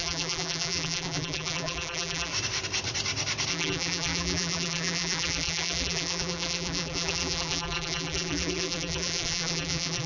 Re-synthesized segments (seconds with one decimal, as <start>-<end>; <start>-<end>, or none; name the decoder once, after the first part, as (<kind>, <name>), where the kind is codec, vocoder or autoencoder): 0.0-2.3 (vocoder, BigVGAN v2); 3.5-10.1